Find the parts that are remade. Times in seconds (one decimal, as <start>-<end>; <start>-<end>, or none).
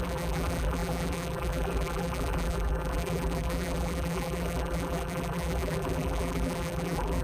0.0-7.2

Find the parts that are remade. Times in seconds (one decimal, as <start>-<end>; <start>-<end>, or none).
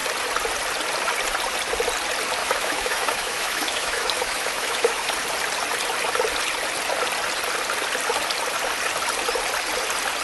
2.4-5.1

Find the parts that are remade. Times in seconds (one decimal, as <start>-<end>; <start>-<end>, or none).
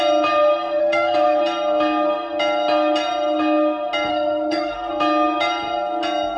0.8-1.4; 4.1-4.9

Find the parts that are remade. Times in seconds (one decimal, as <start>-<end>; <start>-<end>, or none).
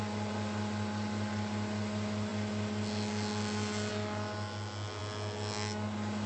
none